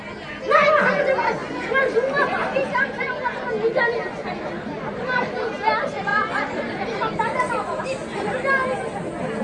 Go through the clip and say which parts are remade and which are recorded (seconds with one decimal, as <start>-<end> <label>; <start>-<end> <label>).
0.0-1.4 recorded; 1.4-3.0 remade; 3.0-6.1 recorded; 6.1-7.8 remade; 7.8-9.4 recorded